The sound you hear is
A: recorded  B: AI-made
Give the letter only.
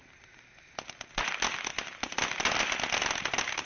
A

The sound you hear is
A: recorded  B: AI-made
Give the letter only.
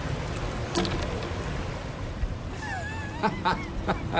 A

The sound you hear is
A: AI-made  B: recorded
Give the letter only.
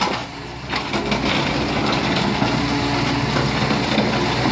B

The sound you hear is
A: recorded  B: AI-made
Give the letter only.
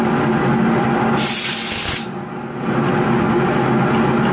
A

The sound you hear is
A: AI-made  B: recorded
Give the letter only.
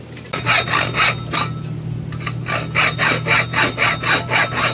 B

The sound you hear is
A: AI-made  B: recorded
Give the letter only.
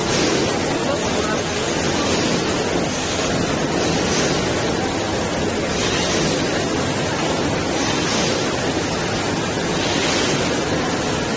B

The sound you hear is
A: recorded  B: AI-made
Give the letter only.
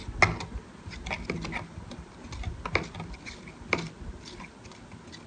A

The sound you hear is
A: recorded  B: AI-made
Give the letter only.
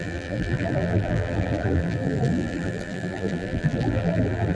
B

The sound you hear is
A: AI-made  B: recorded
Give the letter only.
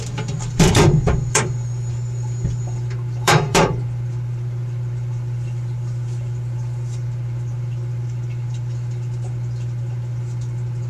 A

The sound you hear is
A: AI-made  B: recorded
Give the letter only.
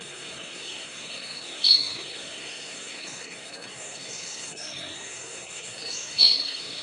A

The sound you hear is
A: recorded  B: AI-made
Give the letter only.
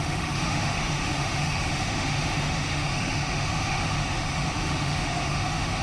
B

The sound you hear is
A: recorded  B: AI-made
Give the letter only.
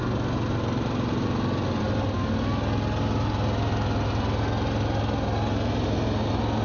A